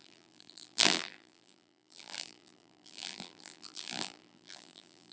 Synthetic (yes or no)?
yes